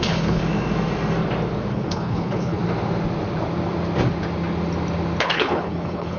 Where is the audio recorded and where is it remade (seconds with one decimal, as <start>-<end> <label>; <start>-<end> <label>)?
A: 0.0-0.4 remade; 0.4-1.7 recorded; 1.7-2.6 remade; 2.6-5.2 recorded; 5.2-6.2 remade